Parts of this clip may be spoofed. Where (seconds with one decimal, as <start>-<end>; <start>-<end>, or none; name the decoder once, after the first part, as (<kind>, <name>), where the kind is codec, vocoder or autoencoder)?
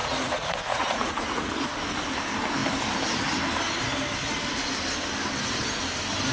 0.0-1.5 (vocoder, Vocos)